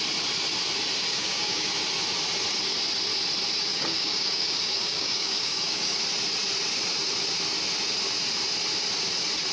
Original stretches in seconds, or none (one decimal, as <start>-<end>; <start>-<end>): 0.0-1.1; 1.7-3.7; 6.0-9.5